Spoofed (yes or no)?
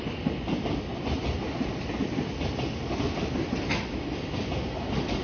no